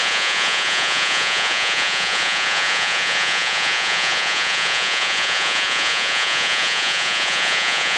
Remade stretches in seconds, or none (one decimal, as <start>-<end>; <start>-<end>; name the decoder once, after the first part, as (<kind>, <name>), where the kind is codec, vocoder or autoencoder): 0.0-8.0 (vocoder, Vocos)